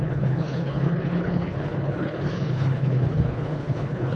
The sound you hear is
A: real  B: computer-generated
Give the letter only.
B